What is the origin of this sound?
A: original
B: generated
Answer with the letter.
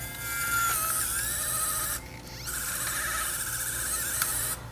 A